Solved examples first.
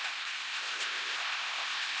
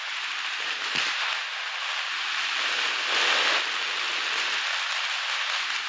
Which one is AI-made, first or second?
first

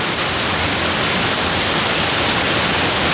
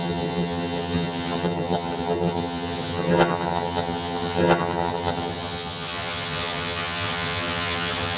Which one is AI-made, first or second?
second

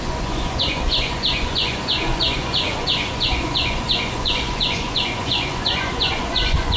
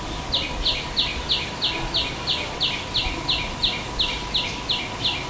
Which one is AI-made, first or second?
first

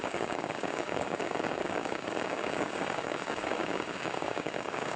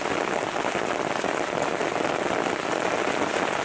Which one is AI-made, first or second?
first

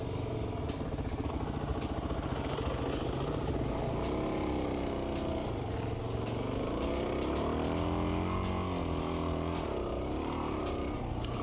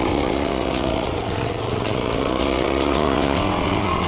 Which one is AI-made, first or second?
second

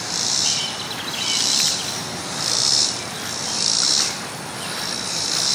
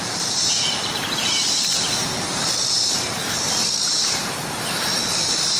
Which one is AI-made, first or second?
second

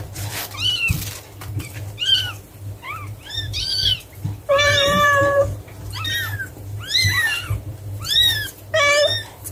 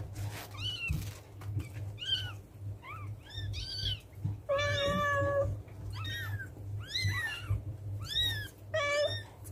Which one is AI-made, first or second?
first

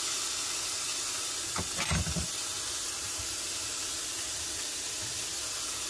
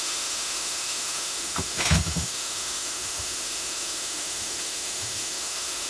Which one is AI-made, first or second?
second